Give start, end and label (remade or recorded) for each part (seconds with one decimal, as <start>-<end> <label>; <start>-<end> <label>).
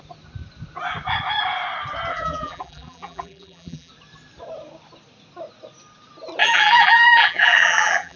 0.0-2.1 recorded; 2.1-3.9 remade; 3.9-6.4 recorded; 6.4-8.2 remade